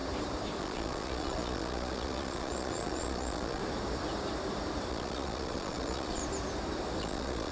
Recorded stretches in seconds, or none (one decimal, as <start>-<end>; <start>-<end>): 0.0-0.6; 3.6-4.9; 6.2-7.0